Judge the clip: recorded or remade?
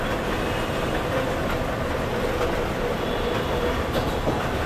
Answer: recorded